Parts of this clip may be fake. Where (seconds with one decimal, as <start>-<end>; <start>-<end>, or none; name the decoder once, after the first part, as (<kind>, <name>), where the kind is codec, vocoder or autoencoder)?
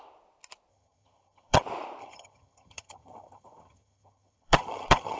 0.7-1.6 (vocoder, HiFi-GAN); 2.0-5.2